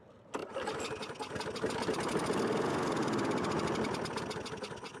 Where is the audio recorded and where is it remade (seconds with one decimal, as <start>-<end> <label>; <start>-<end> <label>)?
0.0-3.0 recorded; 3.0-3.7 remade; 3.7-5.0 recorded